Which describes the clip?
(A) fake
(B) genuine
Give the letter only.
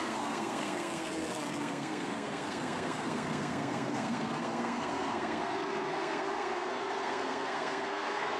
A